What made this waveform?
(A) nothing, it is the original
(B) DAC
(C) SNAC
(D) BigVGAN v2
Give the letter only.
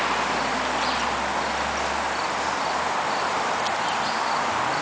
A